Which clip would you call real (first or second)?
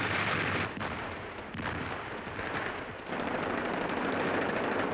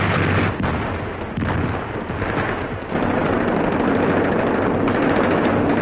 second